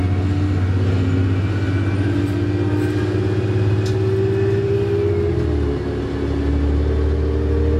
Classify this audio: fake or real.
real